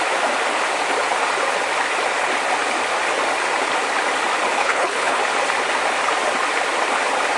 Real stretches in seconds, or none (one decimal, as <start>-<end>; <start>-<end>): 0.0-4.6; 5.2-7.4